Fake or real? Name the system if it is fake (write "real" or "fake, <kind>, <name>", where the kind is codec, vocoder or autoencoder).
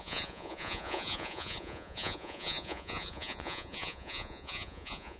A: fake, vocoder, Vocos